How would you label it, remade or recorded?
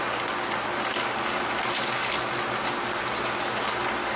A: recorded